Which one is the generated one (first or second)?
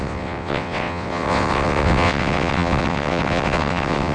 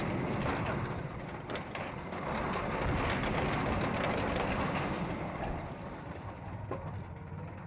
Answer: first